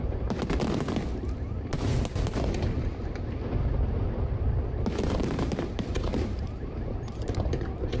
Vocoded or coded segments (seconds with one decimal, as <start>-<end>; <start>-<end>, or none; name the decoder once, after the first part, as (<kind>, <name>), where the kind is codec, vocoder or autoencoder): 0.0-0.4 (vocoder, BigVGAN v2); 5.2-8.0